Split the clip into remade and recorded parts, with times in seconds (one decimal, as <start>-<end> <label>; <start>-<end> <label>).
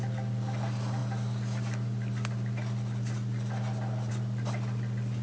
0.0-5.2 recorded